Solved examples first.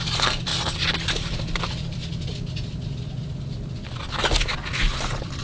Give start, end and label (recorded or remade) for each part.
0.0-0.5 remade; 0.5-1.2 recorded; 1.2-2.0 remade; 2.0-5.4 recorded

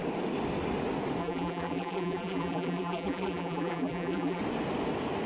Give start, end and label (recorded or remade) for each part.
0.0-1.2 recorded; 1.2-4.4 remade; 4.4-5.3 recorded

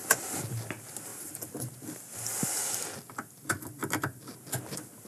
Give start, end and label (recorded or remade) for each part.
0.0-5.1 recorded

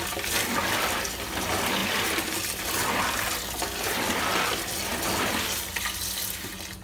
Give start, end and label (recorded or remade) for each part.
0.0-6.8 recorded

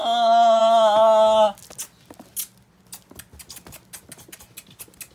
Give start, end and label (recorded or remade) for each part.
0.0-5.1 recorded

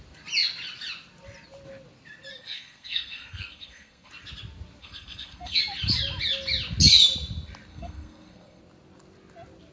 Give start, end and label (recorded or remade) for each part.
0.0-2.3 recorded; 2.3-4.1 remade; 4.1-4.8 recorded; 4.8-5.6 remade; 5.6-7.7 recorded; 7.7-8.6 remade; 8.6-9.7 recorded

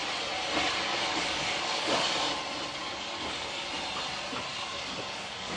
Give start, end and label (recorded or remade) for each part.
0.0-0.9 recorded; 0.9-2.1 remade; 2.1-2.8 recorded; 2.8-3.6 remade; 3.6-4.5 recorded; 4.5-5.6 remade